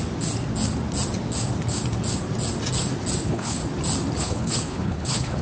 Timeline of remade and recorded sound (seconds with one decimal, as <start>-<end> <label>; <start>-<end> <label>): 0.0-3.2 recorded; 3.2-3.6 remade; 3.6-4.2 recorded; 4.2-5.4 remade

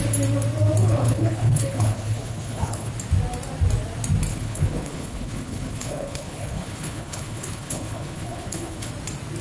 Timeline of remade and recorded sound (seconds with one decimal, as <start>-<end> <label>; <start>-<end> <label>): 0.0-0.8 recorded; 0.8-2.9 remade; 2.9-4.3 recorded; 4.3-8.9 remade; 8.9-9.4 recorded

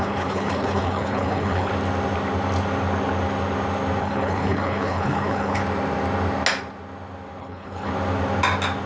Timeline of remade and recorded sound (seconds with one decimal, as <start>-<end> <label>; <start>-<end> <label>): 0.0-1.7 remade; 1.7-4.0 recorded; 4.0-5.6 remade; 5.6-7.4 recorded; 7.4-7.9 remade; 7.9-8.9 recorded

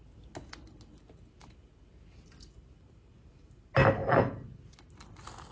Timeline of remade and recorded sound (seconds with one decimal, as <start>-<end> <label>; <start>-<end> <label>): 0.0-5.5 recorded